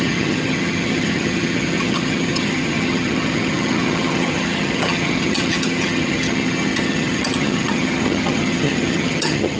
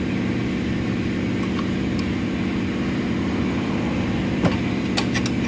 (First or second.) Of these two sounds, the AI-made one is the first